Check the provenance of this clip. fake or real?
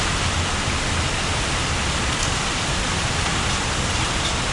real